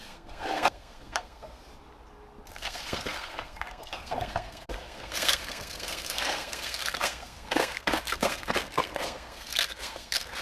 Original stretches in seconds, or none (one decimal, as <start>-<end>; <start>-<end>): 1.7-2.5